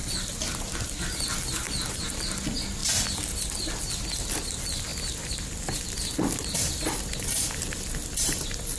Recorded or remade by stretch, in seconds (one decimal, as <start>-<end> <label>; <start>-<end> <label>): 0.0-8.8 recorded